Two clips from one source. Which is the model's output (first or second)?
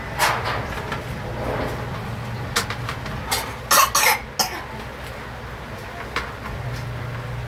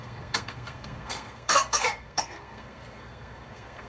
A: second